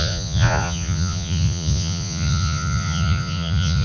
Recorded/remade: remade